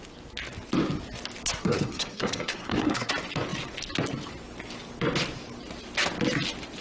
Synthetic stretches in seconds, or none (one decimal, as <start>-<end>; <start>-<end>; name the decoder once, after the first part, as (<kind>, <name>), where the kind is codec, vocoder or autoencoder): 1.6-3.1 (codec, SNAC)